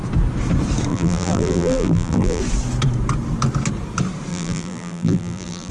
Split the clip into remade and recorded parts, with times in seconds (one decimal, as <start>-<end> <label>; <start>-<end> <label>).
0.0-0.9 recorded; 0.9-2.4 remade; 2.4-4.3 recorded; 4.3-5.7 remade